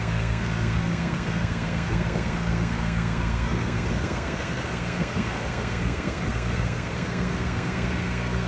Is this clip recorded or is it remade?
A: remade